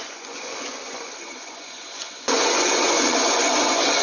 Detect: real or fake fake